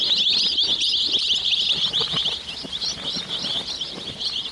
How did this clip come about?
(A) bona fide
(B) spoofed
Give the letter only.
A